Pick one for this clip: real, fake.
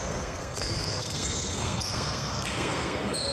fake